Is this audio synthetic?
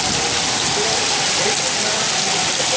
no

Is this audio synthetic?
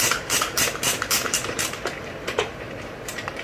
yes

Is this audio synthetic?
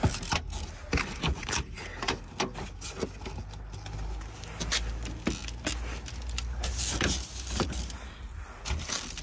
no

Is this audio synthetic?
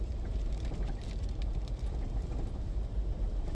yes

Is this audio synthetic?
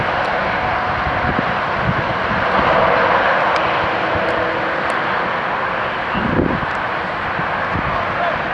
no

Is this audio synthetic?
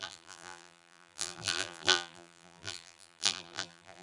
yes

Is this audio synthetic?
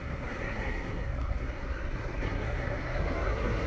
yes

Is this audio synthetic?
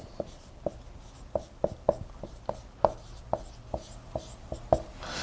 no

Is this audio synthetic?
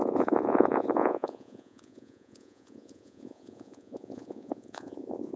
yes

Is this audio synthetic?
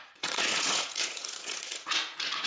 yes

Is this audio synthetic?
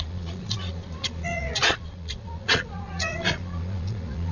yes